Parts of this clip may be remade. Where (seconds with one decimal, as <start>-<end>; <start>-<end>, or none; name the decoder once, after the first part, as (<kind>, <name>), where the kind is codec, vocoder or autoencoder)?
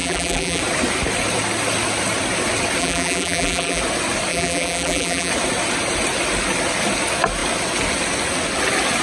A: 0.0-0.6 (vocoder, BigVGAN v2); 2.8-3.8; 4.3-5.3